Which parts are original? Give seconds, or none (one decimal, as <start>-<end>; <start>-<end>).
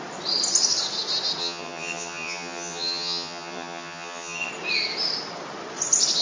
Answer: 0.0-1.4; 4.5-6.2